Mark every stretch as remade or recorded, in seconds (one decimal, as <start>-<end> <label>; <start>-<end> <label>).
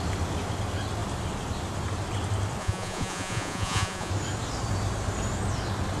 0.0-2.6 recorded; 2.6-4.1 remade; 4.1-6.0 recorded